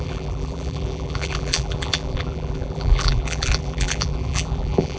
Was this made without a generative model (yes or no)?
no